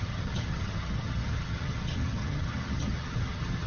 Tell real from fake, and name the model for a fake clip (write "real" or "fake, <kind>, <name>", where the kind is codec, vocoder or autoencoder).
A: fake, vocoder, HiFi-GAN